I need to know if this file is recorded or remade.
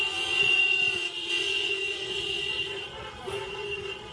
remade